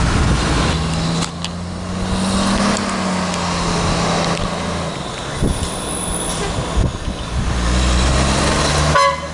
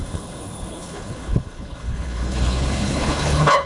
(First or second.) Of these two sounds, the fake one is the second